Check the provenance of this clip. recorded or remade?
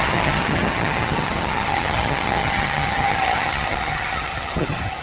remade